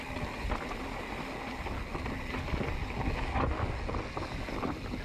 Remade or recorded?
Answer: recorded